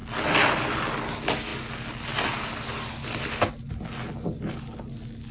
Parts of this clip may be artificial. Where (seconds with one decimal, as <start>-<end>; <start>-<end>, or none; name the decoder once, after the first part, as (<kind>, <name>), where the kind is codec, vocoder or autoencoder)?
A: none